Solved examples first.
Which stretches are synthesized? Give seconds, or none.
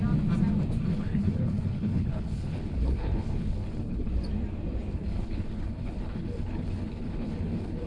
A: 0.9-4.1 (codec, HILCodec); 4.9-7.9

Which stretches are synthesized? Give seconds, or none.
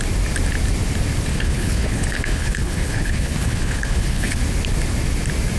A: 1.3-4.4 (codec, HILCodec)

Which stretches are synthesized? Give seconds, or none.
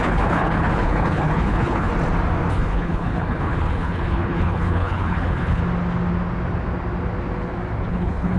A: 0.0-1.9 (codec, HILCodec); 2.5-5.6; 7.9-8.4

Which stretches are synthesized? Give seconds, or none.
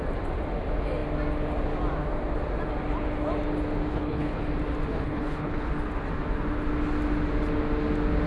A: 3.9-4.4 (codec, HILCodec); 4.9-5.7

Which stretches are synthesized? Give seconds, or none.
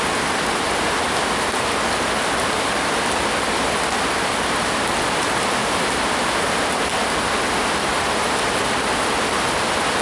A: none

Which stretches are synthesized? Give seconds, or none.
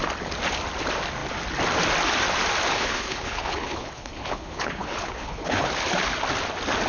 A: 2.7-5.7 (codec, HILCodec)